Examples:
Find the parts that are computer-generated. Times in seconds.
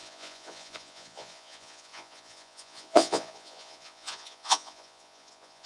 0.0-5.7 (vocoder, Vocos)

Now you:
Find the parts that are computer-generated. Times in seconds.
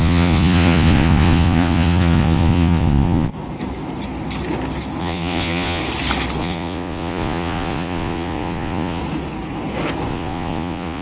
0.0-3.3 (vocoder, Vocos); 5.0-5.8; 6.4-9.0; 10.1-11.0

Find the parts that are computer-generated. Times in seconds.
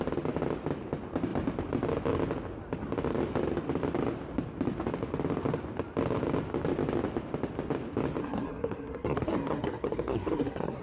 8.2-10.8 (codec, SNAC)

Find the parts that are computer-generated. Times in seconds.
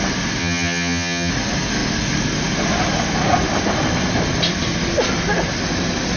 0.4-1.3 (vocoder, HiFi-GAN)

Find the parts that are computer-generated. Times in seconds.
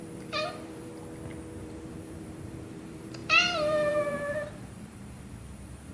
0.0-0.9 (vocoder, BigVGAN v2); 1.6-5.9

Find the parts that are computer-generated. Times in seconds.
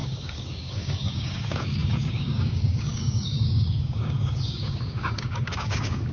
0.0-6.1 (codec, DAC)